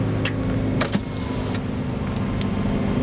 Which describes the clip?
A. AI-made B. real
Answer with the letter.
B